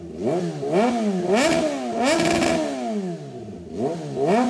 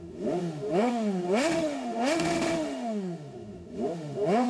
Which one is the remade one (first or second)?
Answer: second